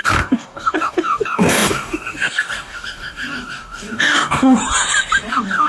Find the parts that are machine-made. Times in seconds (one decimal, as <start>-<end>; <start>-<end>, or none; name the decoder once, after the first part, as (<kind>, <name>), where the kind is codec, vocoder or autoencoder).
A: 0.0-4.6 (codec, DAC); 5.3-5.7